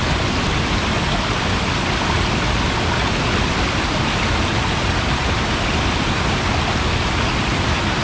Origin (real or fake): real